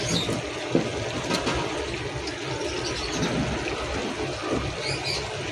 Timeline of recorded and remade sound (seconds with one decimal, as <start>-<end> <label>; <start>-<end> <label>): 0.0-5.5 recorded